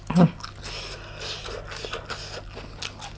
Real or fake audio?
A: real